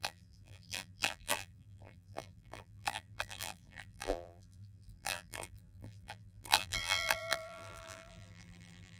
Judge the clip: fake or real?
fake